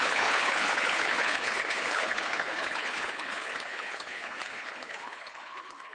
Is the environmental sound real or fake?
fake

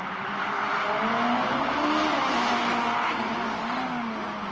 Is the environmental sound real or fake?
real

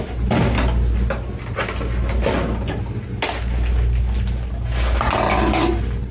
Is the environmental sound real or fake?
real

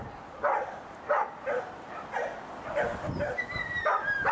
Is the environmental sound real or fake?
real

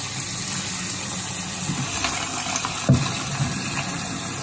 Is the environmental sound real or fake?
real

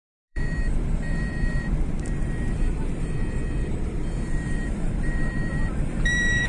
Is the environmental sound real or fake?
fake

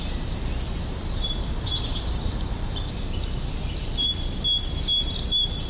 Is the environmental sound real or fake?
real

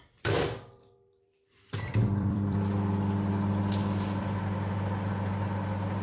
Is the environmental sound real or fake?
fake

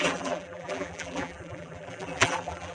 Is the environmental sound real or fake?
fake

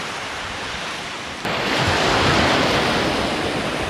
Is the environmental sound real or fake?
real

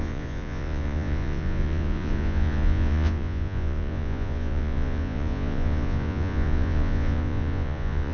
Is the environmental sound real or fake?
fake